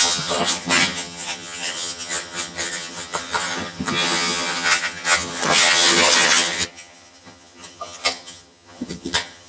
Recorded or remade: remade